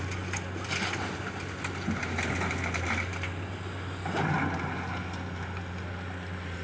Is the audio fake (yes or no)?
no